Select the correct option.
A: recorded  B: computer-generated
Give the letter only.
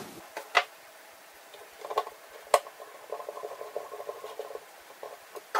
A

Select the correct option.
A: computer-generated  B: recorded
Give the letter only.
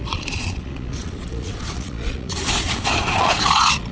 A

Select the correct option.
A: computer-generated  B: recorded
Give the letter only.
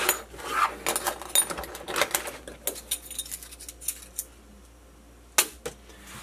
B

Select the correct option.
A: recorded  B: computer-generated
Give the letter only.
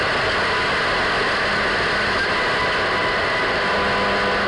A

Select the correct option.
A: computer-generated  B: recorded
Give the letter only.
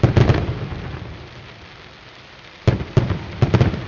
B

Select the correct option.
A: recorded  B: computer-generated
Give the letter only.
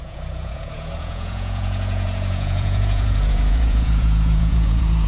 B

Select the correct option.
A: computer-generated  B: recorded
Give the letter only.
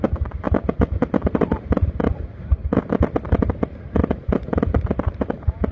B